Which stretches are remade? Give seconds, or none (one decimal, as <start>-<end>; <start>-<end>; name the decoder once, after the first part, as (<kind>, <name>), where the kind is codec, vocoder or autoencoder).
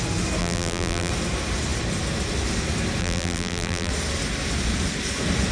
0.4-1.1 (vocoder, BigVGAN v2); 3.0-3.9